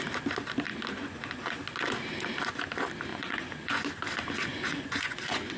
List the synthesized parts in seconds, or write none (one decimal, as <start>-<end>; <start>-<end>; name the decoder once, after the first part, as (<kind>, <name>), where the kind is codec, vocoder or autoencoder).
1.0-1.6 (vocoder, Vocos); 3.1-3.8; 4.5-5.6